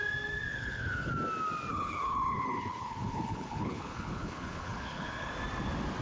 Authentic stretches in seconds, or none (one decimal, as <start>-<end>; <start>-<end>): 0.0-0.5; 1.1-1.7; 5.3-6.0